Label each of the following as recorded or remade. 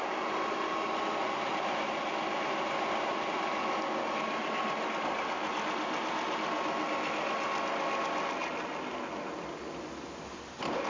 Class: recorded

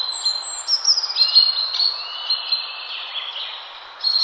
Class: recorded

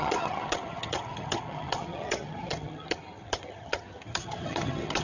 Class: remade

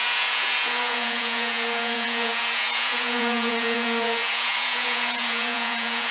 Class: remade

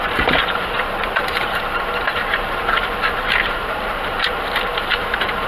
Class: remade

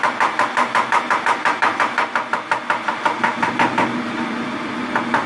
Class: recorded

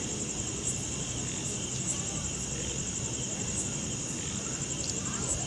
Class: recorded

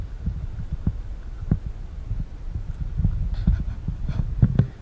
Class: recorded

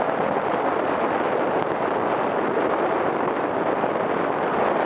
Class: recorded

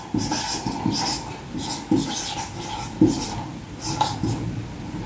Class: recorded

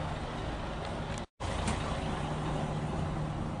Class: recorded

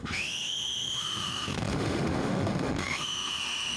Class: remade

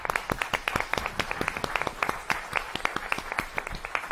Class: recorded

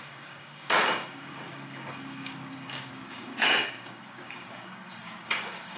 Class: remade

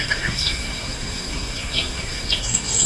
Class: remade